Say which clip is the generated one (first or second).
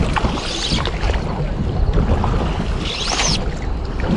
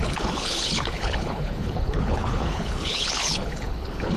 second